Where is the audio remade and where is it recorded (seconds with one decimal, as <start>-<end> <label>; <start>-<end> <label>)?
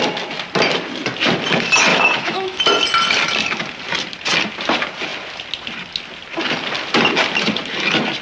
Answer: 0.0-1.9 recorded; 1.9-2.6 remade; 2.6-8.2 recorded